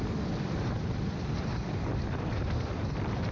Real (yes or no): no